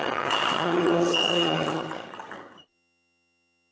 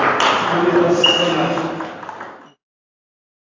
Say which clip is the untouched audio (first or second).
second